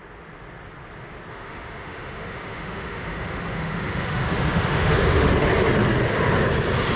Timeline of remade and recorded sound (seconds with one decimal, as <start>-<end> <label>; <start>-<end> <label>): 0.0-1.3 recorded; 1.3-5.5 remade; 5.5-7.0 recorded